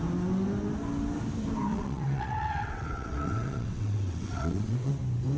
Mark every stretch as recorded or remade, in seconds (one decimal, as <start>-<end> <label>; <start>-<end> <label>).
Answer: 0.0-1.7 recorded; 1.7-4.9 remade; 4.9-5.4 recorded